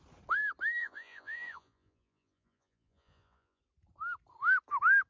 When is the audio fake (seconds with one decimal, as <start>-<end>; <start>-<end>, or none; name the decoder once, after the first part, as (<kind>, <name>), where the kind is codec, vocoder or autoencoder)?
0.8-3.6 (vocoder, Vocos)